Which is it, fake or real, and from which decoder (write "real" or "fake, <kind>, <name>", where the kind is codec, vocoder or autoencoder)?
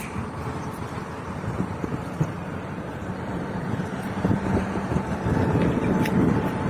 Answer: fake, vocoder, BigVGAN v2